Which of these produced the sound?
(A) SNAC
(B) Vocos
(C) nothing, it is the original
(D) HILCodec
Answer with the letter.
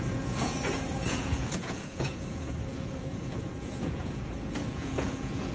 B